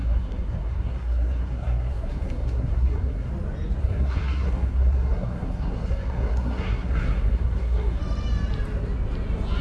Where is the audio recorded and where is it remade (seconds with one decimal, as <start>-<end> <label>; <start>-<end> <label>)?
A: 0.0-3.3 remade; 3.3-3.8 recorded; 3.8-8.0 remade; 8.0-9.6 recorded